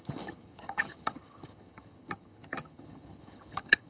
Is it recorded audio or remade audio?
remade